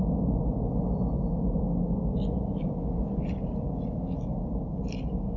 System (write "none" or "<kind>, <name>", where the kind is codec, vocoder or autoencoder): none